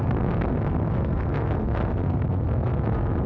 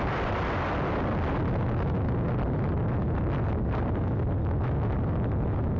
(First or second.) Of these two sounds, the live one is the second